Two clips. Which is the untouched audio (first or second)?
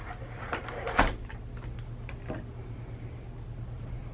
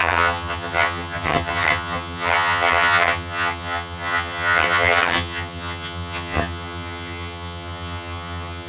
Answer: first